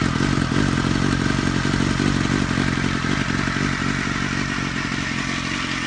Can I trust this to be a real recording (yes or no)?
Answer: yes